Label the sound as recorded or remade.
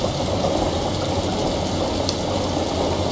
recorded